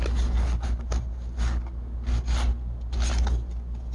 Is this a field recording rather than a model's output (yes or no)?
yes